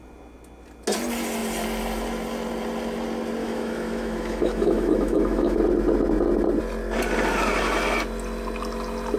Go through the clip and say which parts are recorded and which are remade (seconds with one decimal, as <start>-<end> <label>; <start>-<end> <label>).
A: 0.0-3.4 recorded; 3.4-5.6 remade; 5.6-9.2 recorded